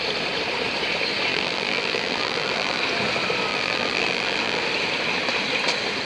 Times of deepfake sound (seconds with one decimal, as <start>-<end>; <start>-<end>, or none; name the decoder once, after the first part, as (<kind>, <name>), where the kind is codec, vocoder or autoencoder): 1.3-2.8 (vocoder, BigVGAN v2); 3.5-4.6